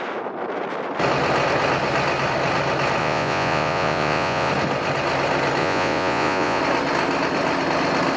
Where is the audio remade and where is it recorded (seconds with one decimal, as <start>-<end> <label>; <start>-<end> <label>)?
0.0-3.0 recorded; 3.0-4.5 remade; 4.5-5.6 recorded; 5.6-6.6 remade; 6.6-8.2 recorded